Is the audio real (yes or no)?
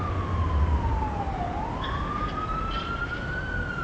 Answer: yes